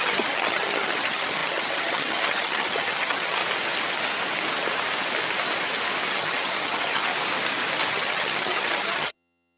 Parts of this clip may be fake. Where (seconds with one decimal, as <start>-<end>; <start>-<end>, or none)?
0.0-3.4; 6.1-7.1; 7.9-9.6